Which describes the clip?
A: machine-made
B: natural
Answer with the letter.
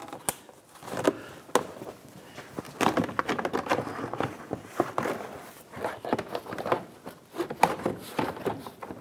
B